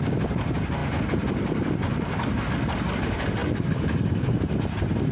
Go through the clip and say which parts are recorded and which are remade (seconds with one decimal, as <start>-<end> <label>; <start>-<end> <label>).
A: 0.0-5.1 recorded